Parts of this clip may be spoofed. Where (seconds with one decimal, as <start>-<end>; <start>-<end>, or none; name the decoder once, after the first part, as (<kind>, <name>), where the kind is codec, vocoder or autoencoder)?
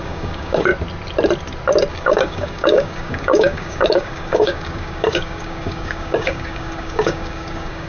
0.0-0.7 (codec, DAC); 1.9-7.9